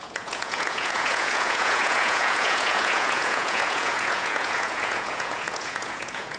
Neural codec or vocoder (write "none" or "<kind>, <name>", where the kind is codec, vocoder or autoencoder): vocoder, Vocos